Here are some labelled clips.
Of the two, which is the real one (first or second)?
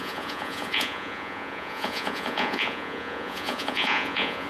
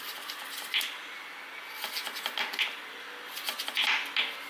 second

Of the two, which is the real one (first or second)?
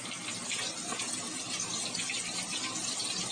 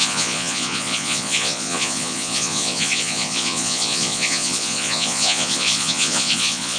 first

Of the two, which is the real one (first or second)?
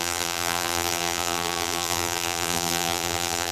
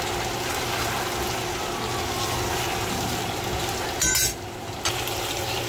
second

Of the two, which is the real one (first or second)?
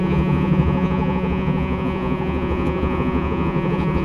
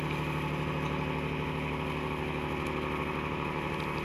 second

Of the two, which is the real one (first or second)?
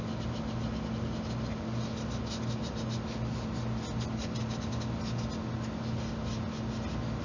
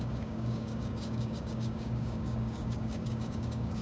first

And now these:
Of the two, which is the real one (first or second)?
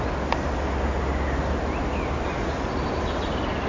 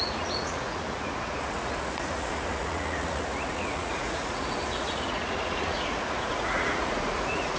first